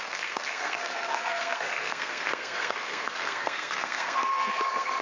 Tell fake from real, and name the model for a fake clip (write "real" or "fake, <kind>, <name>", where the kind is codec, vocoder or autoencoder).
fake, codec, SNAC